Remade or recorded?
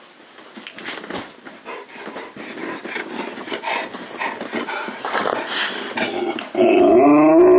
recorded